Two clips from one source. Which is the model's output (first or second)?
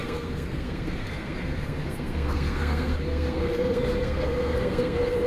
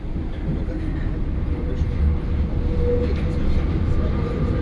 first